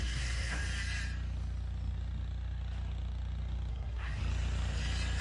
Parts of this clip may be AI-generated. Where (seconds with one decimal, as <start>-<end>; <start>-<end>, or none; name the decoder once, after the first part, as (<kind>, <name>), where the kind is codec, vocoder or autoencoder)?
0.0-0.6 (codec, SNAC); 3.7-4.2